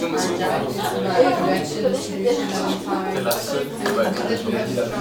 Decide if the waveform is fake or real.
real